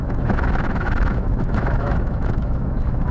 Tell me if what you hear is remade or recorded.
remade